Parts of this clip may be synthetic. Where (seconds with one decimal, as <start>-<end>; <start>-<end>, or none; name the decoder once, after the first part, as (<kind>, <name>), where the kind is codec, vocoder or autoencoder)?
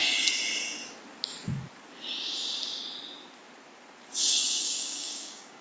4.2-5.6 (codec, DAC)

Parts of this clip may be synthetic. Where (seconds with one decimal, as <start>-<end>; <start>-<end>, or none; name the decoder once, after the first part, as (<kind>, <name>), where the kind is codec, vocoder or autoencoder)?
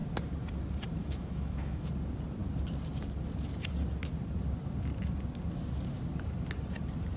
1.0-1.9 (autoencoder, DAC-VAE)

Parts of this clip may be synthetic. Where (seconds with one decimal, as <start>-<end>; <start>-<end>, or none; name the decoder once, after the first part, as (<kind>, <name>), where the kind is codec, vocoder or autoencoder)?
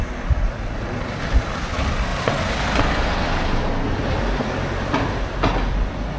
none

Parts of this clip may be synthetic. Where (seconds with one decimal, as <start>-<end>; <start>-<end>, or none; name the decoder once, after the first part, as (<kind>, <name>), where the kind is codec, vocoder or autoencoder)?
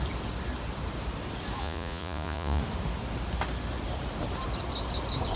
1.6-2.6 (vocoder, Vocos)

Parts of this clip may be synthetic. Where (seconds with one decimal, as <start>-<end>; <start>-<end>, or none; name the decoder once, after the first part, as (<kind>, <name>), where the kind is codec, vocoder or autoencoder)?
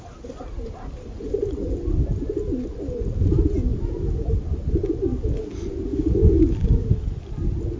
5.9-6.9 (codec, DAC)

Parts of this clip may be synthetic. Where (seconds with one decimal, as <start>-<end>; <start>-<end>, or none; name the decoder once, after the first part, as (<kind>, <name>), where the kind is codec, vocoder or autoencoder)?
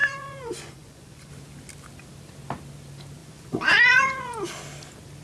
0.0-1.3 (vocoder, Vocos); 3.2-4.5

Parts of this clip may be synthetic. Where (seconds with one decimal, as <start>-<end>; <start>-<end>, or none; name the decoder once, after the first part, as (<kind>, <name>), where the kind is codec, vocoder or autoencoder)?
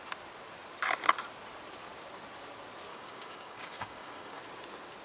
2.9-4.4 (codec, DAC)